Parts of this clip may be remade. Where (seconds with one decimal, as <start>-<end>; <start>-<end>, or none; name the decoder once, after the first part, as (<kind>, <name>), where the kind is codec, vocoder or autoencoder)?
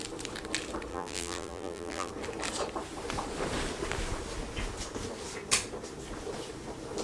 0.9-2.1 (vocoder, BigVGAN v2)